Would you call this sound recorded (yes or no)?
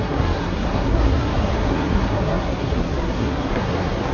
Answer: no